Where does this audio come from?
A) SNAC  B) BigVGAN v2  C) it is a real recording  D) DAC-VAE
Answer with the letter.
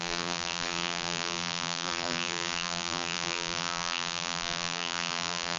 B